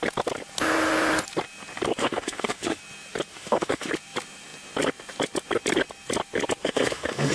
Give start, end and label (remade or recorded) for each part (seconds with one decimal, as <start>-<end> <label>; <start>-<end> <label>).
0.0-2.0 recorded; 2.0-2.8 remade; 2.8-3.3 recorded; 3.3-3.9 remade; 3.9-6.6 recorded; 6.6-7.3 remade